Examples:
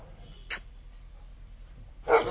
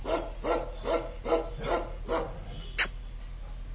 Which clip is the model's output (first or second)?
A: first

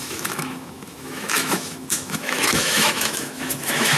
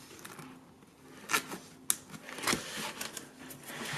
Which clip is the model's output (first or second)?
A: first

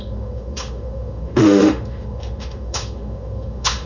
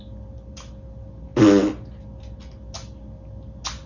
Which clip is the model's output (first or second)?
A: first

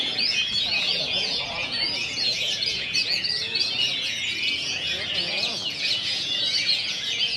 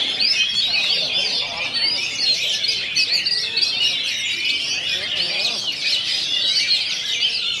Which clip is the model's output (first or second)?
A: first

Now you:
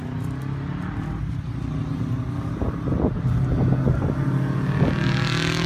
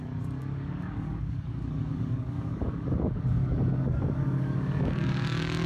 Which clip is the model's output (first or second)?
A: second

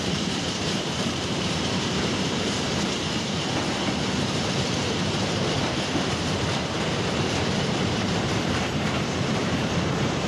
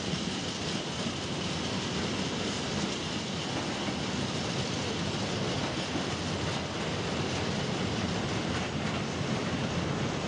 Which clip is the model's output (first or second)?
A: first